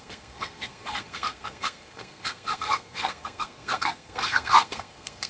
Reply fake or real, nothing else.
fake